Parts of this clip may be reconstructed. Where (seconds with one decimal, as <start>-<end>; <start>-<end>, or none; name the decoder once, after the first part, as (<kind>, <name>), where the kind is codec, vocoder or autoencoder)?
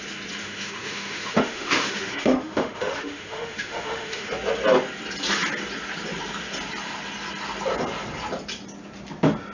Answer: 0.4-4.3 (autoencoder, DAC-VAE)